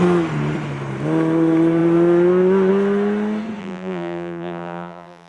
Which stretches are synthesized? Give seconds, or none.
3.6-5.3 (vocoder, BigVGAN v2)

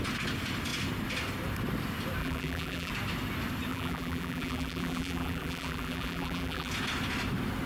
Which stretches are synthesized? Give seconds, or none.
2.2-2.9 (vocoder, BigVGAN v2); 3.7-6.7

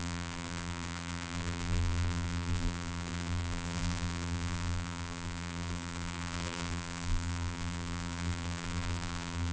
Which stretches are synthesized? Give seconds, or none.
0.0-9.5 (vocoder, BigVGAN v2)

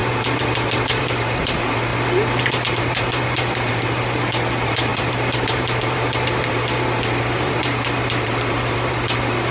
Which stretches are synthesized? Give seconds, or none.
0.0-1.9 (vocoder, BigVGAN v2); 2.4-9.5

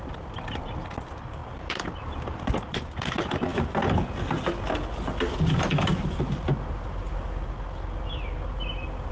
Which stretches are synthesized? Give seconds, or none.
none

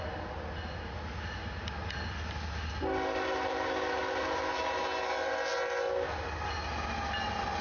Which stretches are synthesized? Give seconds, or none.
none

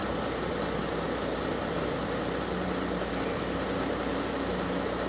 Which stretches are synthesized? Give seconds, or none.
none